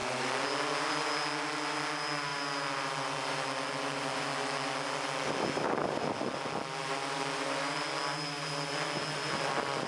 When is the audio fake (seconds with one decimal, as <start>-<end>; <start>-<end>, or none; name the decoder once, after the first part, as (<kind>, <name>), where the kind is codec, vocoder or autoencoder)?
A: none